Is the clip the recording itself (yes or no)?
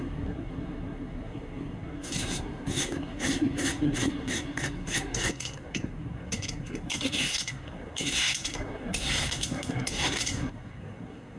no